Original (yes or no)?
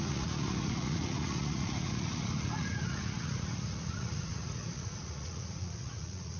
no